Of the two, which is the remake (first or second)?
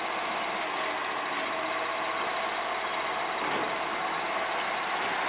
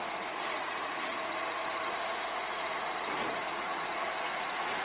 second